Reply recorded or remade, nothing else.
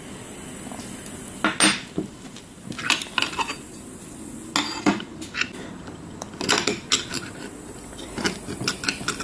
recorded